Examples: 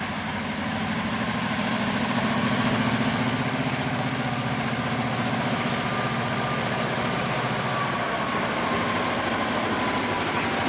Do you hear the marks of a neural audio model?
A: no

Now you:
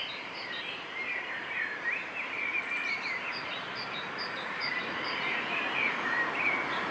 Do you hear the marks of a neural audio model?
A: yes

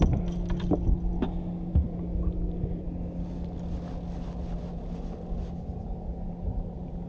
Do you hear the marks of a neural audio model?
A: no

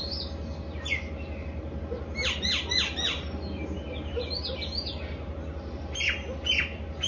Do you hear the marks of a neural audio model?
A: no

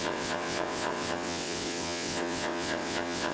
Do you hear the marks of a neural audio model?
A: yes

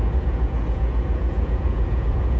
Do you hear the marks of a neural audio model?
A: yes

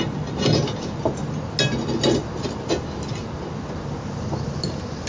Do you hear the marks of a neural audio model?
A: no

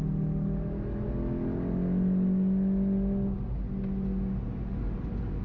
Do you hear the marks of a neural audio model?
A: no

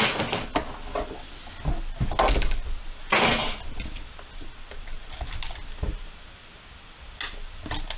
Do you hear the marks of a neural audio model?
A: no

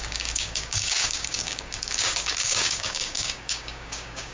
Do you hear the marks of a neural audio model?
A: yes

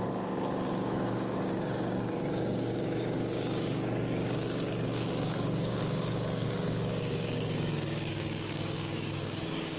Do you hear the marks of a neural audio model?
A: yes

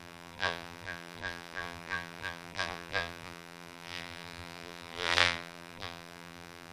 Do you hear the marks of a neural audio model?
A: yes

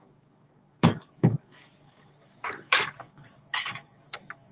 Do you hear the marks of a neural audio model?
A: yes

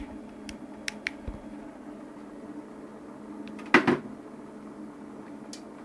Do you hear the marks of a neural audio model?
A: no